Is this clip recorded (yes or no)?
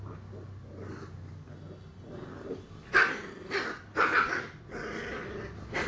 yes